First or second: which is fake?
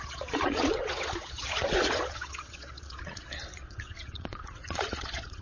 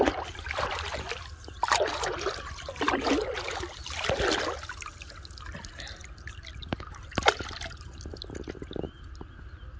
first